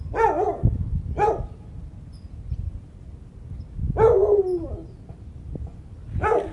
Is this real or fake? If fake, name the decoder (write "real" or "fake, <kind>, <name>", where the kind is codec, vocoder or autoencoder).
real